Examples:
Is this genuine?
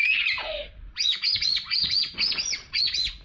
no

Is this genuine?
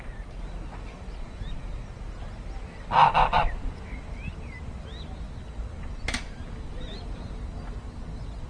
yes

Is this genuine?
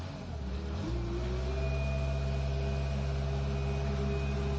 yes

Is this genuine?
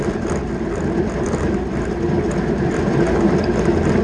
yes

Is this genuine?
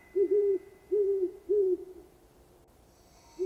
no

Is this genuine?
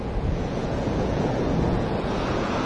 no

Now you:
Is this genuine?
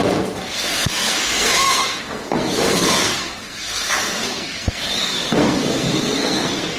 no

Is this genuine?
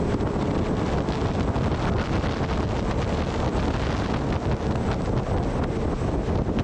yes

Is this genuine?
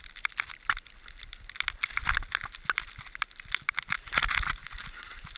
yes